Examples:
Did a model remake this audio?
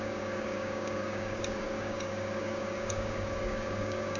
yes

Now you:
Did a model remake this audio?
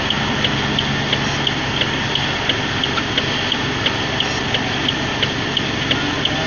no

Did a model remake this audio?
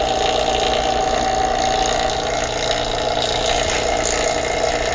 no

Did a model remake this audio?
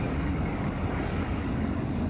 yes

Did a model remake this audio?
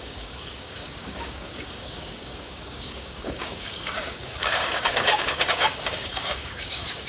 yes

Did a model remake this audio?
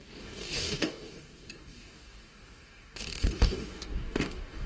yes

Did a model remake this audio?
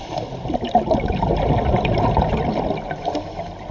no